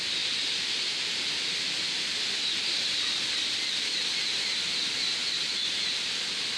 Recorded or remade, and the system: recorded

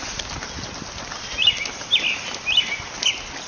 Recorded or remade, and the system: recorded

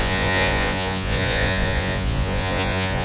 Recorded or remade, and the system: remade, vocoder, Vocos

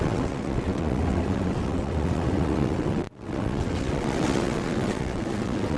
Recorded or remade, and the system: remade, vocoder, WaveNeXt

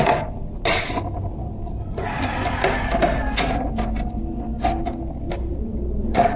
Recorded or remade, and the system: recorded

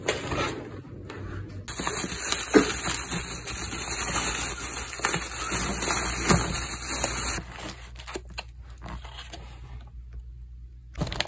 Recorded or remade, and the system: recorded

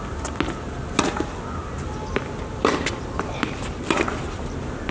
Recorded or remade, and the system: recorded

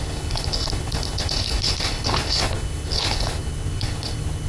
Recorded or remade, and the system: remade, codec, HILCodec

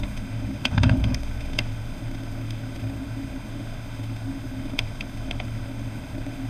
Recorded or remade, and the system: remade, autoencoder, DAC-VAE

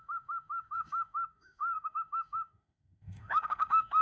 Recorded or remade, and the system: remade, autoencoder, DAC-VAE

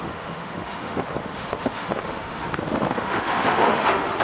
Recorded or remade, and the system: remade, autoencoder, DAC-VAE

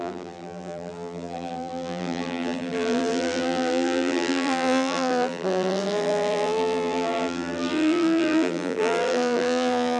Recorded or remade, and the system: remade, vocoder, BigVGAN v2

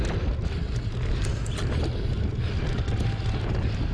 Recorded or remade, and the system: recorded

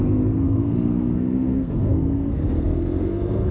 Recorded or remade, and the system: remade, codec, SNAC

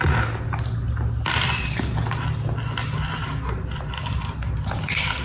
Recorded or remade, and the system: recorded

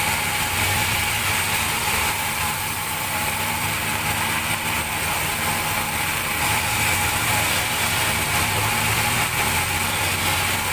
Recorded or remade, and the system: remade, vocoder, BigVGAN v2